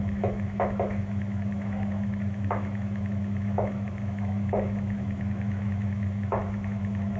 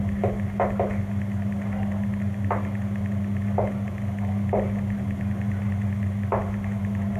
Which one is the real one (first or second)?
second